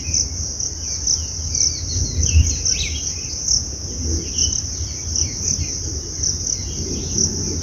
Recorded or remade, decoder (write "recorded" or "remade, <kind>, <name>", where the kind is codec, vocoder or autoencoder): recorded